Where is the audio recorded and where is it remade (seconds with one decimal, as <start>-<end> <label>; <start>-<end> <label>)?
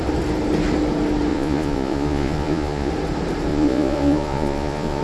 0.0-1.3 recorded; 1.3-2.9 remade; 2.9-3.5 recorded; 3.5-5.0 remade